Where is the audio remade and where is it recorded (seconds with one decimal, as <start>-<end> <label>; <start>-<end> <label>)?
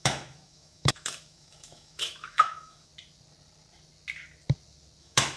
0.0-2.9 remade; 2.9-5.0 recorded; 5.0-5.4 remade